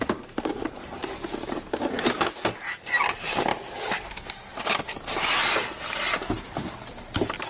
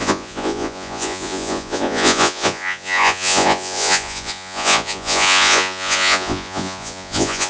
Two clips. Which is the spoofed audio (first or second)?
second